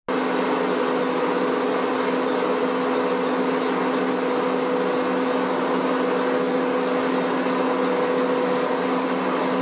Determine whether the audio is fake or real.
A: real